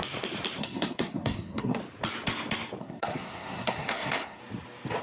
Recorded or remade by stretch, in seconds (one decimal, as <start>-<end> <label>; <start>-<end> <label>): 0.0-0.6 recorded; 0.6-1.8 remade; 1.8-2.8 recorded; 2.8-4.4 remade; 4.4-5.0 recorded